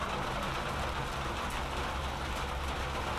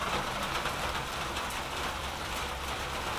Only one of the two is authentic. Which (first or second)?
first